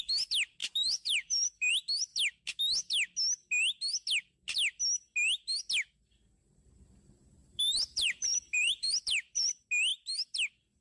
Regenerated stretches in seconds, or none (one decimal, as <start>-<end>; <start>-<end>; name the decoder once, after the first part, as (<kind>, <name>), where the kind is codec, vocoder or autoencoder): 0.6-1.7 (vocoder, BigVGAN v2); 7.4-9.5